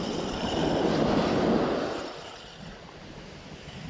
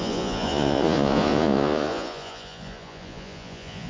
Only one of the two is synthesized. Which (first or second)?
second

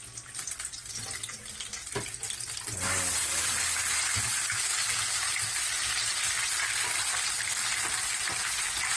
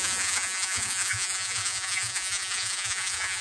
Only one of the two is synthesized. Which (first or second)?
second